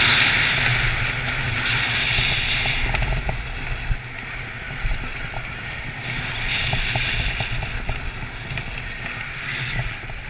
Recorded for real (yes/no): yes